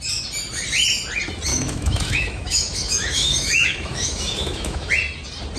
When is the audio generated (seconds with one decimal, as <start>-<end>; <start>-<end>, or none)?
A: 1.5-4.9